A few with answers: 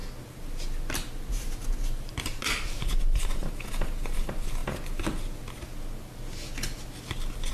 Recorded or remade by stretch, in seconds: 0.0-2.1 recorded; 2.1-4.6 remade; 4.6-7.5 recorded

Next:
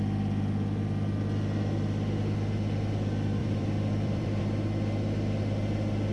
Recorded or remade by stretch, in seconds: 0.0-3.4 recorded; 3.4-4.4 remade; 4.4-6.1 recorded